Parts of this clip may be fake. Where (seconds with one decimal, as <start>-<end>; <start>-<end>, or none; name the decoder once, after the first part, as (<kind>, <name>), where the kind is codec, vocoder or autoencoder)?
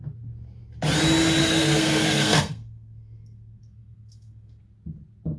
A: 1.4-4.6 (codec, SNAC)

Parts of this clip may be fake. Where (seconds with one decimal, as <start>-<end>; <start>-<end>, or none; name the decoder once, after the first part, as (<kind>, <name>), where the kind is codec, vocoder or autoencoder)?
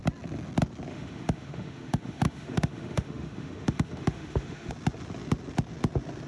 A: 0.9-4.7 (autoencoder, DAC-VAE)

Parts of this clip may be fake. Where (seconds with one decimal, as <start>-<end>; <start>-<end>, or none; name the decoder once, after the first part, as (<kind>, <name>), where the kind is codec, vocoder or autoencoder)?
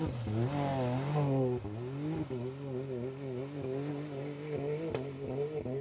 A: none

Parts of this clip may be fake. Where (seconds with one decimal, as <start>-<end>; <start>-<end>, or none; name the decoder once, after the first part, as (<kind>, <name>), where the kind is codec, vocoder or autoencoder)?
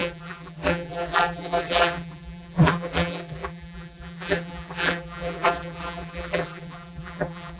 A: 0.0-7.6 (vocoder, BigVGAN v2)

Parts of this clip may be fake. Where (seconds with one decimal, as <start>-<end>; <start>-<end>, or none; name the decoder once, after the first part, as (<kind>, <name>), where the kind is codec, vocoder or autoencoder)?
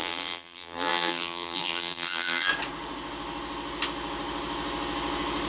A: 0.0-2.5 (vocoder, BigVGAN v2)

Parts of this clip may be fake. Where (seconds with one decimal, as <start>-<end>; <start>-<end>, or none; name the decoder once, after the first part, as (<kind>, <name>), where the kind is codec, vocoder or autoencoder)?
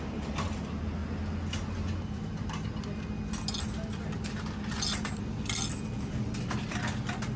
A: none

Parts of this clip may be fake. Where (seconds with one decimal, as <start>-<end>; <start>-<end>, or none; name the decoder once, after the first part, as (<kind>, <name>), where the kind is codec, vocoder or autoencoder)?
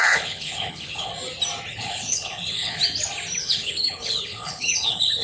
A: 0.0-1.1 (codec, HILCodec); 1.7-2.8; 3.4-5.2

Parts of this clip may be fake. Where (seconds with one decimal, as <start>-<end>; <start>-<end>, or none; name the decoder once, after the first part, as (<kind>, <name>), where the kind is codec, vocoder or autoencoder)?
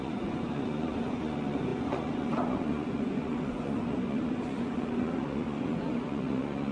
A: 0.0-6.7 (vocoder, Vocos)